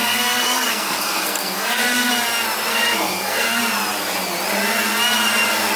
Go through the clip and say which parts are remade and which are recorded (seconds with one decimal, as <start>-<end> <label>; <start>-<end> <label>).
0.0-2.1 remade; 2.1-2.7 recorded; 2.7-3.6 remade; 3.6-5.8 recorded